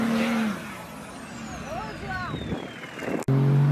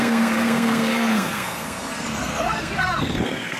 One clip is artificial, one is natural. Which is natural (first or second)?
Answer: first